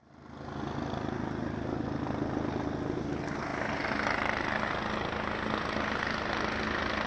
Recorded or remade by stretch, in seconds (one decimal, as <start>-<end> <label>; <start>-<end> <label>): 0.0-7.1 recorded